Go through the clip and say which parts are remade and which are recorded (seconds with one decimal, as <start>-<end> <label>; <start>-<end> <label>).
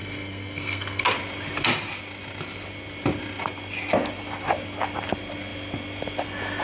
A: 0.0-1.0 remade; 1.0-6.6 recorded